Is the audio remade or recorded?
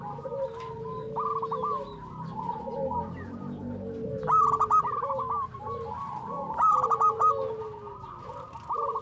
recorded